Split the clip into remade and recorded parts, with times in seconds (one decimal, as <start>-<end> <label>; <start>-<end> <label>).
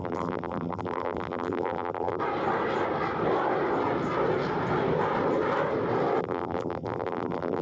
0.0-2.2 remade; 2.2-6.2 recorded; 6.2-7.6 remade